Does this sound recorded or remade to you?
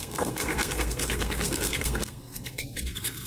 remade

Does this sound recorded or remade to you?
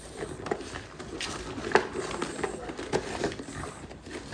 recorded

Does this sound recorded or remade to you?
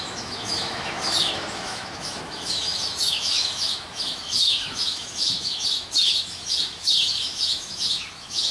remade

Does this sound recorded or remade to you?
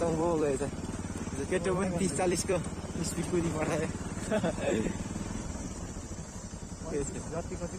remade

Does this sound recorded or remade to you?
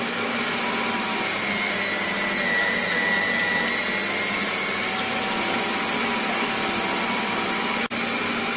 recorded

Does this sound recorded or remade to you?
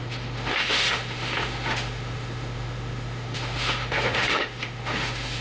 remade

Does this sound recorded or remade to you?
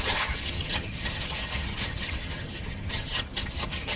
remade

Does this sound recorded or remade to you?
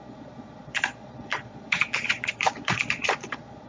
remade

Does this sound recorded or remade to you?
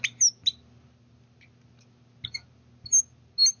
recorded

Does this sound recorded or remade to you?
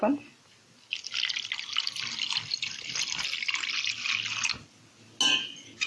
recorded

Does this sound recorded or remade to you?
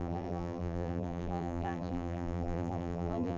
remade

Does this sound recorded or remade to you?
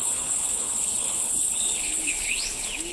remade